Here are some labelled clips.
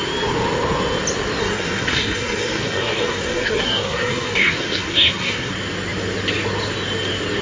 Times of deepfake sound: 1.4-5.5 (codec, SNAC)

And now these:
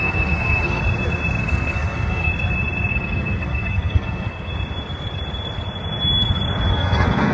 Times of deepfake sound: 0.0-0.8 (codec, SNAC); 1.4-2.3; 2.9-4.5; 6.7-7.3